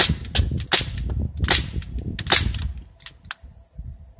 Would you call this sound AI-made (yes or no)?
no